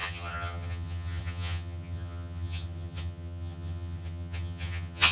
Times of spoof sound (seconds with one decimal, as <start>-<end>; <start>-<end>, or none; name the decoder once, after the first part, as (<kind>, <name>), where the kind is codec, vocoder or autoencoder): 0.0-5.1 (vocoder, HiFi-GAN)